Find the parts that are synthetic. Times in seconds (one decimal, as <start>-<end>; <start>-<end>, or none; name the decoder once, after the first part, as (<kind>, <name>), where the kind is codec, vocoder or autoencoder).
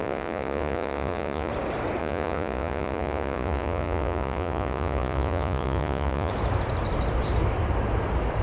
0.0-1.5 (vocoder, Vocos); 2.0-6.3